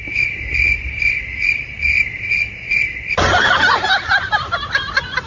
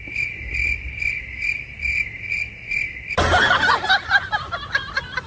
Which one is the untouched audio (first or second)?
second